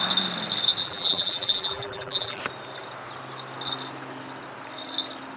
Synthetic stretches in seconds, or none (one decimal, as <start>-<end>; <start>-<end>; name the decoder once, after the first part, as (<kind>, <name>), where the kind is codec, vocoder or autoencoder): 0.8-2.4 (vocoder, BigVGAN v2)

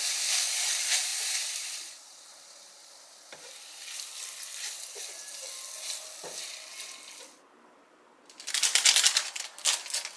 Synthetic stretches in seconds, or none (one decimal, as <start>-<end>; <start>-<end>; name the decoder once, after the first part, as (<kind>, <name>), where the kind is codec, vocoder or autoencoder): 1.1-4.8 (vocoder, BigVGAN v2)

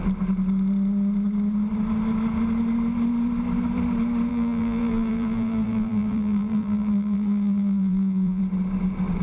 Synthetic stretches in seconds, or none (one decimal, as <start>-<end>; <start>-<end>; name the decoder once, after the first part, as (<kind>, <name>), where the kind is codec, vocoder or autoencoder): 4.3-8.4 (vocoder, BigVGAN v2)

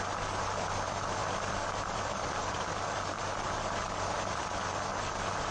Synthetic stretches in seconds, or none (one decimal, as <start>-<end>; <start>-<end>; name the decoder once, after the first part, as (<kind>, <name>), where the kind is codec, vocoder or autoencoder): 1.2-4.5 (vocoder, BigVGAN v2); 4.9-5.5

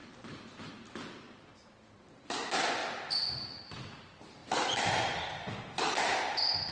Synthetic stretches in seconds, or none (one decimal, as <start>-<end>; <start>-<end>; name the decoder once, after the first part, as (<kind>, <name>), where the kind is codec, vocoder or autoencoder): 0.0-0.7 (vocoder, BigVGAN v2); 2.8-3.7

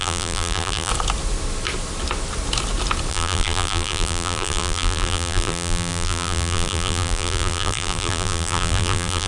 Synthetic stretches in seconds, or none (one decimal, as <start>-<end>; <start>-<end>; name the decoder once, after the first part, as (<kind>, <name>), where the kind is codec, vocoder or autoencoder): 0.0-0.9 (vocoder, BigVGAN v2); 3.1-9.3